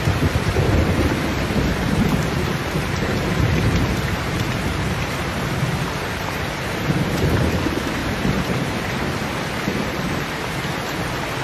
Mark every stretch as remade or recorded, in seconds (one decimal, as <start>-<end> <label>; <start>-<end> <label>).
0.0-2.2 recorded; 2.2-7.2 remade; 7.2-8.0 recorded; 8.0-8.9 remade; 8.9-9.7 recorded; 9.7-10.3 remade; 10.3-11.4 recorded